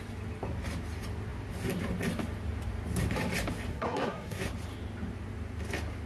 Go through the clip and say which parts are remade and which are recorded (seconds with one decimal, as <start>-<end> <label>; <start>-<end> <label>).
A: 0.0-3.7 recorded; 3.7-4.4 remade; 4.4-6.1 recorded